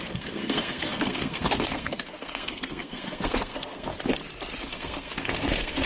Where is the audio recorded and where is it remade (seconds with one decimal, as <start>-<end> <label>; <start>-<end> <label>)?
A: 0.0-3.9 remade; 3.9-4.7 recorded; 4.7-5.9 remade